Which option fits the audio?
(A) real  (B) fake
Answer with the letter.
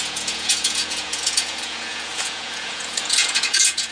B